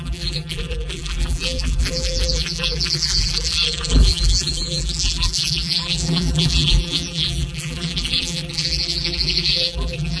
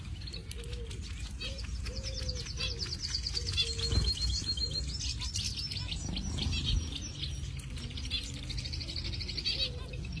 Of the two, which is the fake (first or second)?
first